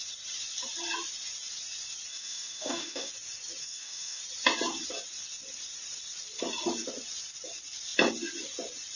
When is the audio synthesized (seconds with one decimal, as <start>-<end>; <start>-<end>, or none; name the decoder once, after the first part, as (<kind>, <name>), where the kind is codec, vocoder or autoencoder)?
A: 2.1-3.1 (codec, DAC); 3.6-4.2